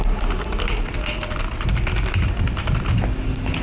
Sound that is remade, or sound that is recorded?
recorded